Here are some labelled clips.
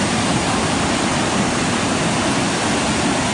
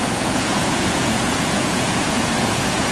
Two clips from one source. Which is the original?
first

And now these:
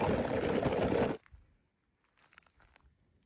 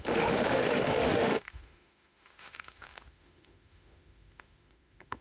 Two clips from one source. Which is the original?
first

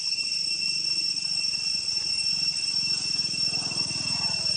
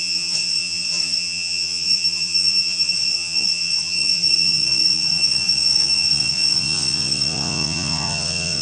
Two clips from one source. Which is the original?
first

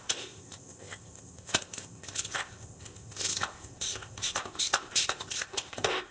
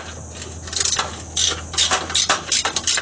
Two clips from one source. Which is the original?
second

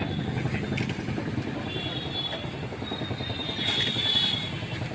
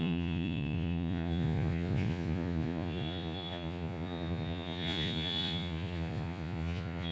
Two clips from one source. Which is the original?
first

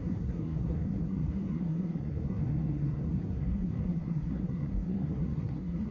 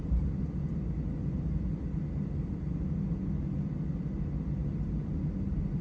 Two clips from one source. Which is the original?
second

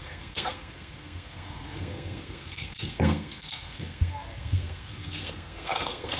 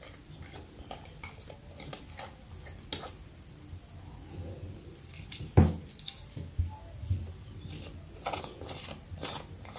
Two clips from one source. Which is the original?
second